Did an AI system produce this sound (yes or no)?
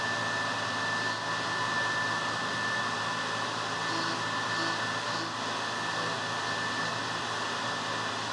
no